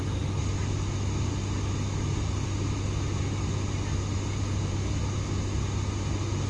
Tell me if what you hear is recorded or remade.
recorded